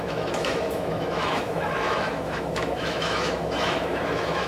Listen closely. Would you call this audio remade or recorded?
remade